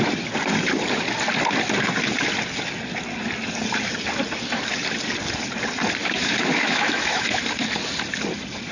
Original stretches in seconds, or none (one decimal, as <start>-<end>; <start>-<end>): 0.0-6.0; 7.4-8.7